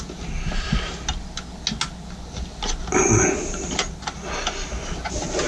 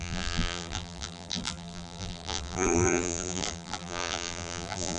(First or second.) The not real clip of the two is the second